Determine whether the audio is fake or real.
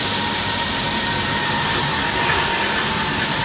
fake